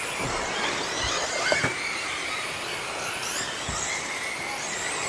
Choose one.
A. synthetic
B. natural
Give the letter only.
B